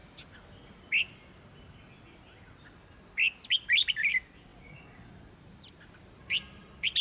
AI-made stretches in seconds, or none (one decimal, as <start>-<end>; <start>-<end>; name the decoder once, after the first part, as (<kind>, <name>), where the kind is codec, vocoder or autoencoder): 4.5-6.6 (vocoder, BigVGAN v2)